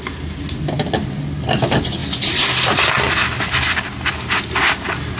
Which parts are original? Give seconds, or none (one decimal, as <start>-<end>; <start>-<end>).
0.0-5.2